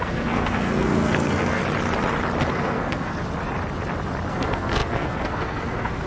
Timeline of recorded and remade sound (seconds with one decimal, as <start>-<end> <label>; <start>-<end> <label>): 0.0-1.6 remade; 1.6-2.5 recorded; 2.5-3.2 remade; 3.2-4.3 recorded; 4.3-6.1 remade